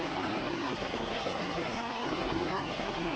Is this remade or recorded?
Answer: remade